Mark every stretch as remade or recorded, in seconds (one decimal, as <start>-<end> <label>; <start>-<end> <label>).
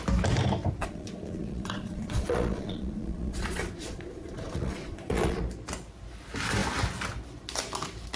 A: 0.0-0.8 recorded; 0.8-5.4 remade; 5.4-8.2 recorded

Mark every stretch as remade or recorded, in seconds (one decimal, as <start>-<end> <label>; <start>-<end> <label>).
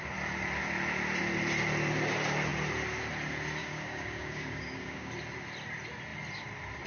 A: 0.0-3.6 recorded; 3.6-5.1 remade; 5.1-6.9 recorded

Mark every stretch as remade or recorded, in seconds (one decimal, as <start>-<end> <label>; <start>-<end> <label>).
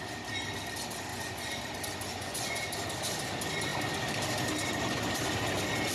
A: 0.0-1.1 recorded; 1.1-1.6 remade; 1.6-2.1 recorded; 2.1-2.6 remade; 2.6-5.9 recorded